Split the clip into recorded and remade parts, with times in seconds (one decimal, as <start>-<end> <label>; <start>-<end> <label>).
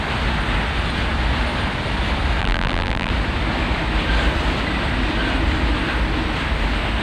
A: 0.0-2.4 recorded; 2.4-3.1 remade; 3.1-7.0 recorded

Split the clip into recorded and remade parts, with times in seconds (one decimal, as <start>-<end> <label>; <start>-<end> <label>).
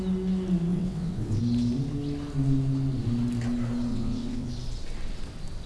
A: 0.0-0.7 recorded; 0.7-1.4 remade; 1.4-3.9 recorded; 3.9-4.5 remade; 4.5-5.7 recorded